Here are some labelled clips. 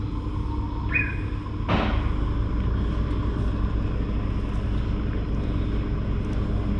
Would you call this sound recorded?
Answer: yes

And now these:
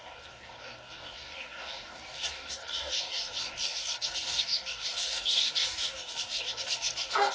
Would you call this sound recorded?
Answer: no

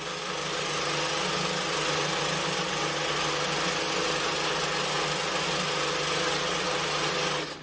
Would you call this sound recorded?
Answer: yes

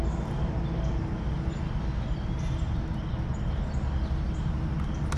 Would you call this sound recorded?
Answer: yes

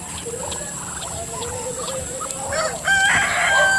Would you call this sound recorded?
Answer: yes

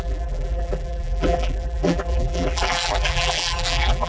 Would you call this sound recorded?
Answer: no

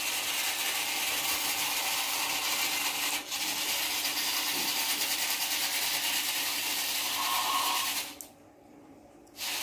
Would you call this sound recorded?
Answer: yes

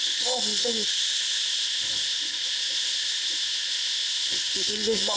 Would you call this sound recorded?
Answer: no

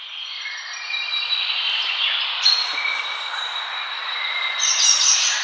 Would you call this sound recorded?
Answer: yes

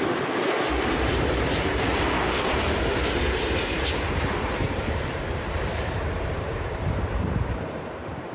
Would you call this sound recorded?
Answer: no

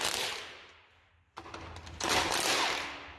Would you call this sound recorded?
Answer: yes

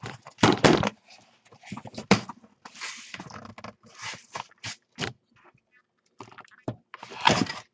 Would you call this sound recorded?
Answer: yes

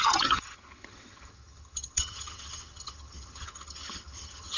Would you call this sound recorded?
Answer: no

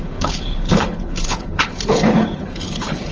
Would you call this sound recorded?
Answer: no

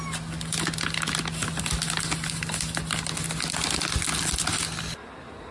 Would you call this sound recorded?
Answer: yes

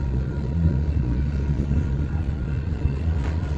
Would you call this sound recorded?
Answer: no